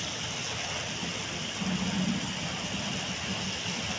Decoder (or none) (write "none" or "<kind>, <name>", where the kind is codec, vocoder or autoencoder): none